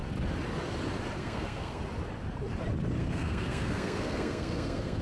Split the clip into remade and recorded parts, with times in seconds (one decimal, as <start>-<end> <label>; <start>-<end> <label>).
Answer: 0.0-1.2 recorded; 1.2-1.8 remade; 1.8-3.0 recorded; 3.0-5.0 remade